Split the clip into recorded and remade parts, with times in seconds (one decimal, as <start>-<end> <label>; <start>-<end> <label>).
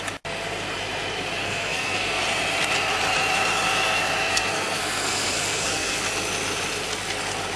0.0-1.4 recorded; 1.4-2.2 remade; 2.2-4.3 recorded; 4.3-6.0 remade; 6.0-7.6 recorded